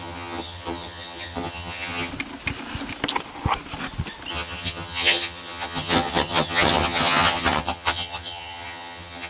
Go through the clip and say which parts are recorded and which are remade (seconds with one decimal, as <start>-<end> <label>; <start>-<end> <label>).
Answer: 0.0-2.1 remade; 2.1-4.3 recorded; 4.3-9.3 remade